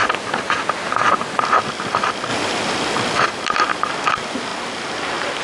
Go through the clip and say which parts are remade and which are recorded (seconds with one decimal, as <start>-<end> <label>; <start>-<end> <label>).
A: 0.0-1.9 recorded; 1.9-5.4 remade